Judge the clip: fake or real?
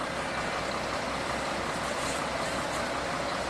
real